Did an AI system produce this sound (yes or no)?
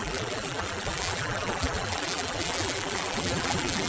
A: yes